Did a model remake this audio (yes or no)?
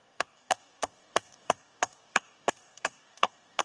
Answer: yes